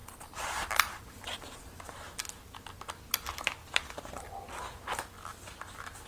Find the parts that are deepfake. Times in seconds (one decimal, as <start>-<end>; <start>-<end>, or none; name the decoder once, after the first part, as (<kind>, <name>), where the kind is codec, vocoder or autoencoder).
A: 0.0-1.8 (vocoder, BigVGAN v2); 3.6-4.2